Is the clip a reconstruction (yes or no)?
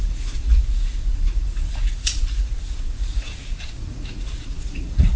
yes